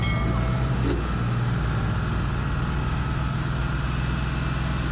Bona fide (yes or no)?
yes